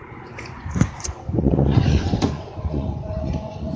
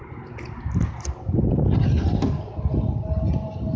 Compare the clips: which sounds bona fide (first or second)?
second